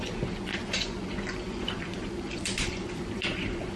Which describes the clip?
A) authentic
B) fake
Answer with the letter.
B